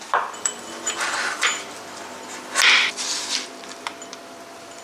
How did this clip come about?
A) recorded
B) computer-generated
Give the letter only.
A